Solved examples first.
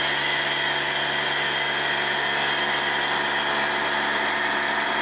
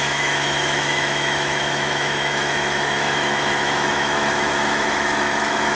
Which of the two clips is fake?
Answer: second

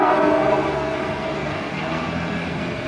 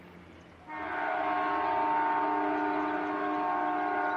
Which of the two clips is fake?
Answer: first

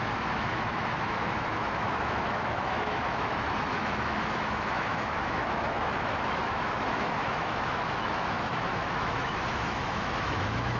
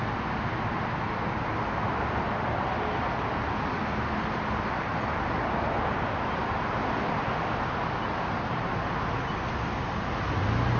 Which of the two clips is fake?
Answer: first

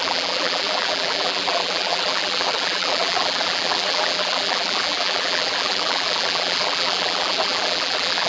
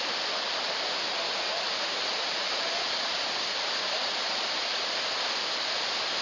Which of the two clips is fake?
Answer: first